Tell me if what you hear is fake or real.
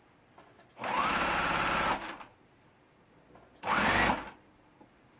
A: real